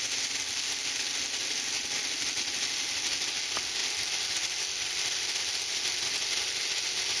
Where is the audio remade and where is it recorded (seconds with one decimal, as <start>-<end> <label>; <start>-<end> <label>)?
0.0-7.2 recorded